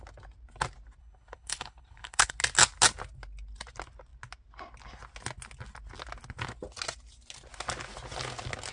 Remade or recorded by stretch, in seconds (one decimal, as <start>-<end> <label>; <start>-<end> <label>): 0.0-1.0 recorded; 1.0-2.3 remade; 2.3-8.7 recorded